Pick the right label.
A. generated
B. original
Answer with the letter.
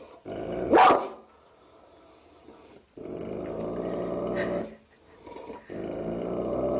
B